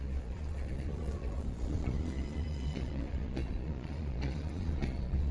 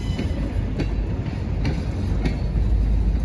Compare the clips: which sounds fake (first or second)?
first